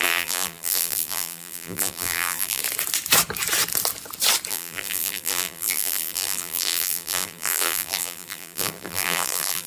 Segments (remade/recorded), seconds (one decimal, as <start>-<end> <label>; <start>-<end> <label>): 0.0-2.6 remade; 2.6-4.5 recorded; 4.5-9.7 remade